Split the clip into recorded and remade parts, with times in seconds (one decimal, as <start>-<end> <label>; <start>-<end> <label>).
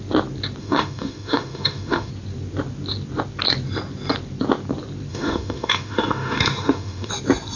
0.0-0.6 recorded; 0.6-2.1 remade; 2.1-5.1 recorded; 5.1-7.1 remade; 7.1-7.6 recorded